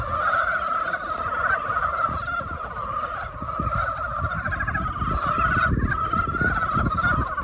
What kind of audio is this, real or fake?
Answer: real